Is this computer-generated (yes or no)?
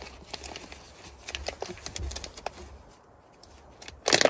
no